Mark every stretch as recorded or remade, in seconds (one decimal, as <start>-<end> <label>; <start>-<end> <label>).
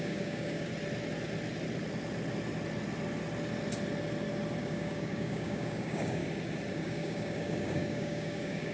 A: 0.0-0.7 remade; 0.7-4.6 recorded; 4.6-6.2 remade; 6.2-6.7 recorded; 6.7-8.7 remade